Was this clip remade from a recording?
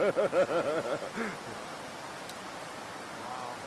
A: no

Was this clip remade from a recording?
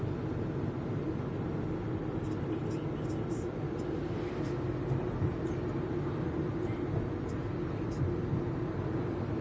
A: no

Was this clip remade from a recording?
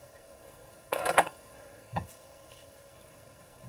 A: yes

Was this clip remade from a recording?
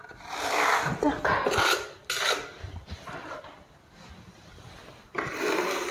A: no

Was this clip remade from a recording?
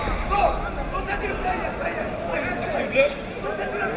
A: no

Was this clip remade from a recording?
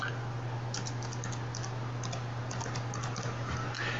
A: no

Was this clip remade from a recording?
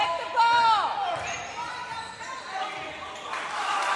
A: no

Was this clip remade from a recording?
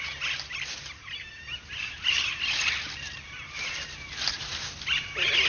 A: no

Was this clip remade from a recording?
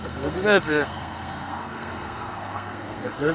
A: yes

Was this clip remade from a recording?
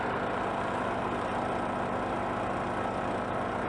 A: no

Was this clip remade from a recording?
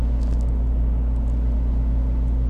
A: no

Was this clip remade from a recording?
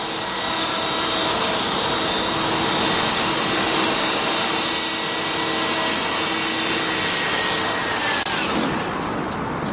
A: no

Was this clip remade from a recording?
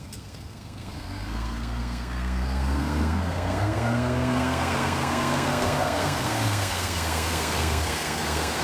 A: yes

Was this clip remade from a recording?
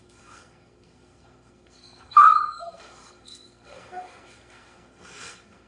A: yes